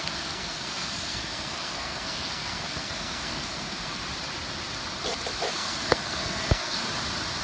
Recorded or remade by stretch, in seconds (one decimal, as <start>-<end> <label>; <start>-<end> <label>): 0.0-4.0 remade; 4.0-5.5 recorded; 5.5-6.8 remade; 6.8-7.4 recorded